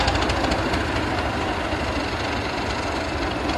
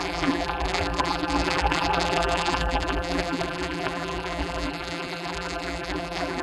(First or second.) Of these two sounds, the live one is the first